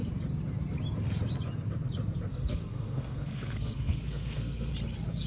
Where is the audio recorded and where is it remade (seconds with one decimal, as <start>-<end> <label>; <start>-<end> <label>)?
0.0-2.3 recorded; 2.3-4.7 remade; 4.7-5.3 recorded